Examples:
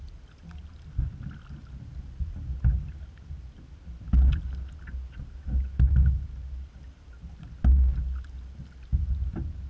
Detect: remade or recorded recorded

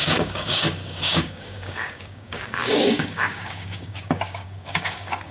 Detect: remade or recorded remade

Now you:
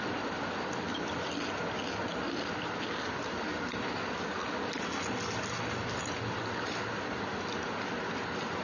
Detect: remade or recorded recorded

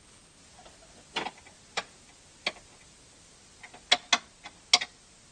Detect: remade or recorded recorded